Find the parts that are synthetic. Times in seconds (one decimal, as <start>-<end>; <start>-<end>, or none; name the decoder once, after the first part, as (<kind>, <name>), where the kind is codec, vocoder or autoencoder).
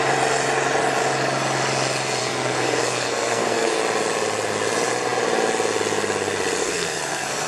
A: 2.2-3.8 (codec, SNAC); 6.6-7.5